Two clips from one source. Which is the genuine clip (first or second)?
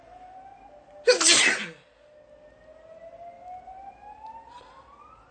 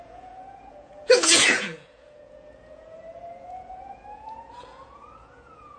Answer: first